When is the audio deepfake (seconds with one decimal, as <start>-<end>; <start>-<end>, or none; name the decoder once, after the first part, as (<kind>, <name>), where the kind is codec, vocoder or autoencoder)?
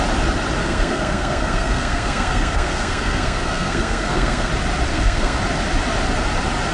0.6-4.5 (codec, SNAC); 4.9-5.4